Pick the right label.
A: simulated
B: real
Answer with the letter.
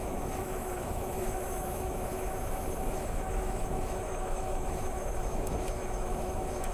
A